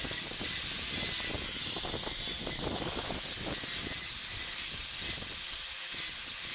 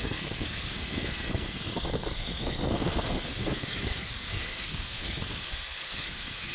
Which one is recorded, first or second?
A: first